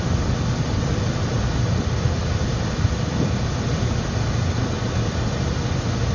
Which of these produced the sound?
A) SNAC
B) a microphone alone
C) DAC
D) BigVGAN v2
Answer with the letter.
B